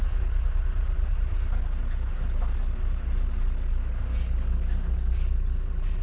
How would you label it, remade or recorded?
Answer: recorded